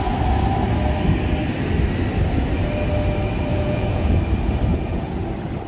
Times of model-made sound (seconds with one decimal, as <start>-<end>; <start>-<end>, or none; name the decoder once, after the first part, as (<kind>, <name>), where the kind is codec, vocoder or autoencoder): 3.5-4.2 (vocoder, Vocos); 4.7-5.3